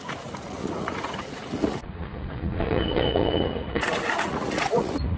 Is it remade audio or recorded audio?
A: remade